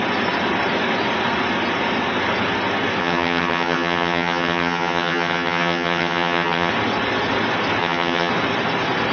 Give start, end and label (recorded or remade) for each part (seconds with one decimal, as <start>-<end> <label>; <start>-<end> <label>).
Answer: 0.0-3.0 recorded; 3.0-6.7 remade; 6.7-7.8 recorded; 7.8-8.3 remade; 8.3-9.1 recorded

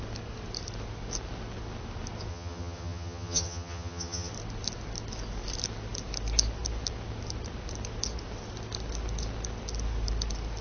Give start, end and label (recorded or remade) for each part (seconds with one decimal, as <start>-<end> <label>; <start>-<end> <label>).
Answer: 0.0-2.3 recorded; 2.3-4.3 remade; 4.3-10.6 recorded

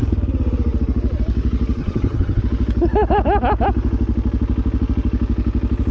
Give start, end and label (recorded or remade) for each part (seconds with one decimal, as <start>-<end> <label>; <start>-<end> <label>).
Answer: 0.0-1.8 recorded; 1.8-2.4 remade; 2.4-5.9 recorded

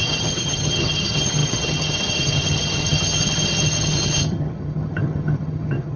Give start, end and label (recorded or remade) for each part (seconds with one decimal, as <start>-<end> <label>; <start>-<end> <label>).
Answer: 0.0-6.0 remade

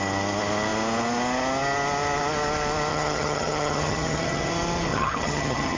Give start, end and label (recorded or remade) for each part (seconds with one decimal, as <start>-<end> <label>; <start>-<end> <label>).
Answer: 0.0-2.9 recorded; 2.9-4.5 remade; 4.5-4.9 recorded; 4.9-5.8 remade

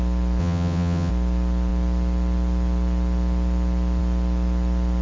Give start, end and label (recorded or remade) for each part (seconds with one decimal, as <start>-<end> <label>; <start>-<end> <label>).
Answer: 0.0-0.4 recorded; 0.4-1.1 remade; 1.1-5.0 recorded